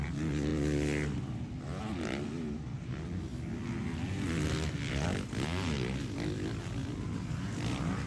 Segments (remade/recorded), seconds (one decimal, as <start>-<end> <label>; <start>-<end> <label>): 0.0-8.1 recorded